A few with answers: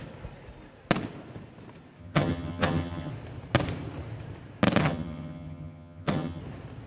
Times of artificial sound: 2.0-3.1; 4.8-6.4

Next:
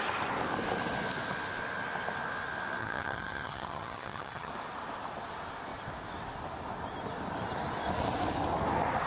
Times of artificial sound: 2.8-4.5